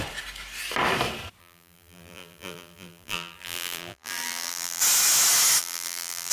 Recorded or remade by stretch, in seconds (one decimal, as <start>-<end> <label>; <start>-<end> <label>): 0.0-1.4 recorded; 1.4-4.8 remade; 4.8-5.6 recorded; 5.6-6.3 remade